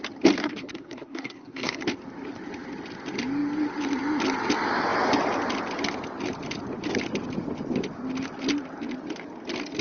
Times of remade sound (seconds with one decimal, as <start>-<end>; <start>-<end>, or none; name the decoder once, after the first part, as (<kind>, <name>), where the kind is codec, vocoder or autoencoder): 0.4-1.8 (codec, SNAC)